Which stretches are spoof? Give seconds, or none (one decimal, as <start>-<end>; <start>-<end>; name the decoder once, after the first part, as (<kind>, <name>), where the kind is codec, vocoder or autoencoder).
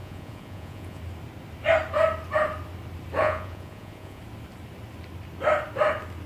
0.0-1.0 (vocoder, Vocos); 3.2-4.2